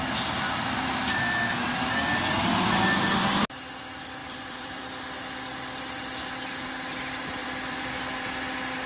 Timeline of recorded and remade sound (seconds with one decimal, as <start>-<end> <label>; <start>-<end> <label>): 0.0-4.2 recorded; 4.2-4.8 remade; 4.8-7.4 recorded; 7.4-7.9 remade; 7.9-8.9 recorded